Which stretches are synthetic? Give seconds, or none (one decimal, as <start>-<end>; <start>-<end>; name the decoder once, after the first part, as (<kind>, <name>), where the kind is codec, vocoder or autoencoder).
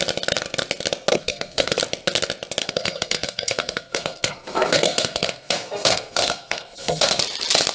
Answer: 1.1-1.8 (codec, SNAC); 2.6-7.2